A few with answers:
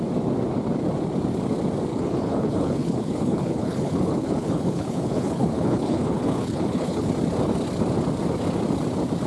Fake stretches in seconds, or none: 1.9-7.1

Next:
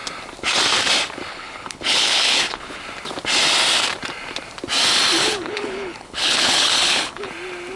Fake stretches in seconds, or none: 1.3-2.8; 5.2-7.3

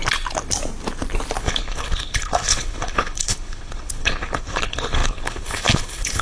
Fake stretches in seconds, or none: 1.4-6.2

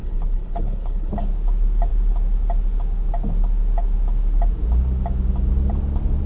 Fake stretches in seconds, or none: 0.0-1.1

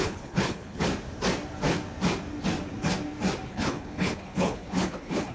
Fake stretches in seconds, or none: 0.0-0.9; 3.5-5.3

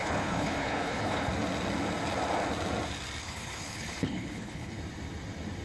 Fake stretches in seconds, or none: 0.0-1.3; 3.2-4.8

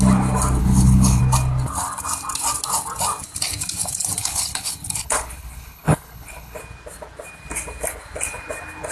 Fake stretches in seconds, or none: 0.6-1.2; 4.2-6.6